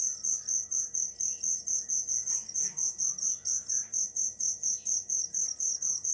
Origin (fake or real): real